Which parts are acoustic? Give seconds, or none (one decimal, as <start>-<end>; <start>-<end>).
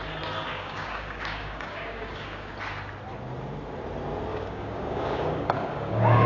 0.0-0.5; 2.5-4.3